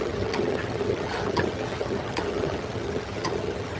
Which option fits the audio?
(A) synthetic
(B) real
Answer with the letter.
A